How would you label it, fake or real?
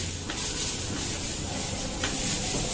real